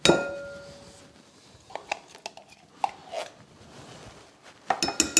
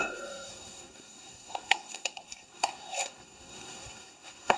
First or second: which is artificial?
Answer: second